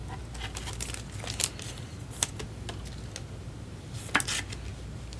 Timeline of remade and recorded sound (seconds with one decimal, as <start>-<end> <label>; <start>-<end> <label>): 0.0-5.2 recorded